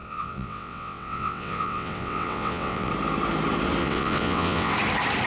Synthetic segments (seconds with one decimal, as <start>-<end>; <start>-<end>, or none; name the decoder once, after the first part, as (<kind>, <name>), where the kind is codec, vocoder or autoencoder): 0.0-2.9 (vocoder, WaveNeXt); 3.8-4.7